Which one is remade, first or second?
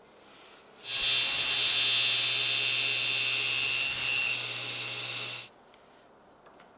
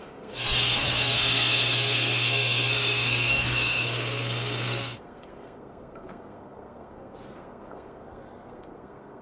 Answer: second